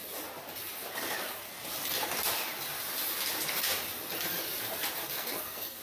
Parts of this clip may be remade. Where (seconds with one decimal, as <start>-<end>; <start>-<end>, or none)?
5.0-5.8